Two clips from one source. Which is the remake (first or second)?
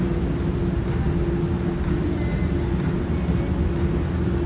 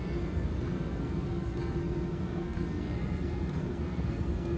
second